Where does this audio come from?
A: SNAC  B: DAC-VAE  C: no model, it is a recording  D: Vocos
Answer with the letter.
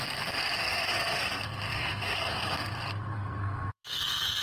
A